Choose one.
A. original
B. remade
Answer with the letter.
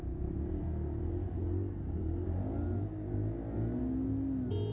A